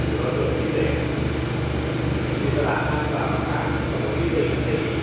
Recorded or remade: recorded